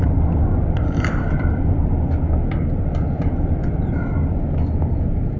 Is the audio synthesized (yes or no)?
no